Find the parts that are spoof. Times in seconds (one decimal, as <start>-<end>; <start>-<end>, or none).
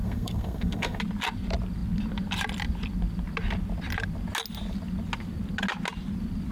0.0-1.0